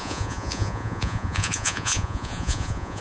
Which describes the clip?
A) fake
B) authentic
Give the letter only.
A